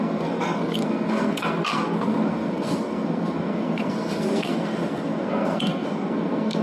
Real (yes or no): no